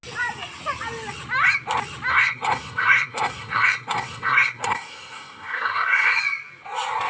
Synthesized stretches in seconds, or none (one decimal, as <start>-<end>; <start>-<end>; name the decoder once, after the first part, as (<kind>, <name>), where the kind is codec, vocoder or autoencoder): 2.1-6.2 (codec, SNAC)